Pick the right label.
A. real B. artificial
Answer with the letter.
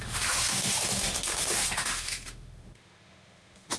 B